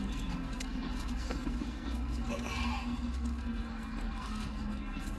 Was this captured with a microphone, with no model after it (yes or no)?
no